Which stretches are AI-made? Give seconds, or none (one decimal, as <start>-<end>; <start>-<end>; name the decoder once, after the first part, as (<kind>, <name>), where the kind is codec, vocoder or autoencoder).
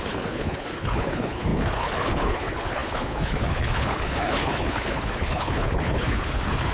0.0-6.7 (codec, HILCodec)